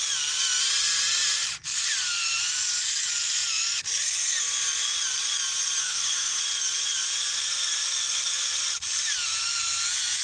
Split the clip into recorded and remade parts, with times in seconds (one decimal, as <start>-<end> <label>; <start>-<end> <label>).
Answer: 0.0-5.8 recorded; 5.8-6.4 remade; 6.4-10.2 recorded